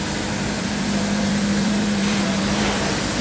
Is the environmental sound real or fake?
fake